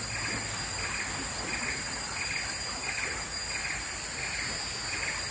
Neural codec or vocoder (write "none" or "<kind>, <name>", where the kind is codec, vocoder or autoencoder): none